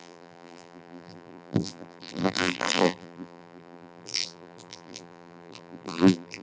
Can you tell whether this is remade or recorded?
remade